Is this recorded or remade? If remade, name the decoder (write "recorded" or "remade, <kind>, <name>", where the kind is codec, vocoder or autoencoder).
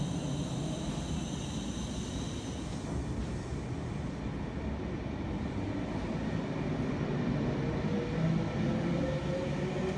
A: recorded